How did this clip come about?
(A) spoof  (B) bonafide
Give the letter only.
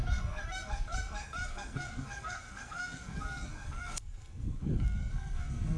A